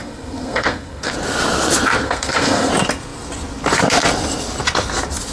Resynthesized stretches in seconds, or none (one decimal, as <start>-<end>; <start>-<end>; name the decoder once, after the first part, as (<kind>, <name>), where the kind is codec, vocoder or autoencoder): 0.0-1.1 (codec, SNAC); 2.0-2.7